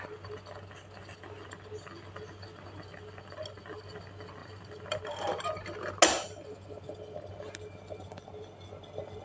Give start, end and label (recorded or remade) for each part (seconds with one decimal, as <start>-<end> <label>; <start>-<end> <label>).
0.0-4.4 recorded; 4.4-5.0 remade; 5.0-9.2 recorded